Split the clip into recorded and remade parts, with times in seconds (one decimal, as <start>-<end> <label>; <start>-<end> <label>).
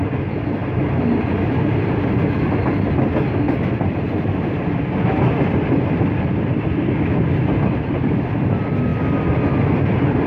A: 0.0-10.3 recorded